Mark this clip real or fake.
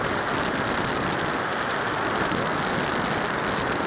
real